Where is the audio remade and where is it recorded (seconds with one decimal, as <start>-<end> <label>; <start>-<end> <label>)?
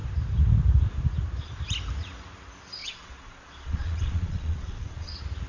0.0-2.8 recorded; 2.8-5.1 remade; 5.1-5.5 recorded